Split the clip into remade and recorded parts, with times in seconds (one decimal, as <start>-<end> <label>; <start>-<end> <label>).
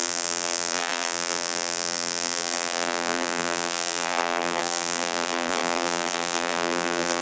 0.0-7.2 remade